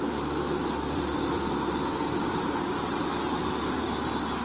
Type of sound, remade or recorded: recorded